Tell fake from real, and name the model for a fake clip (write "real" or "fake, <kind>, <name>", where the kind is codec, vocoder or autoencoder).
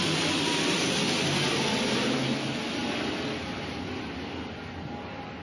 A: real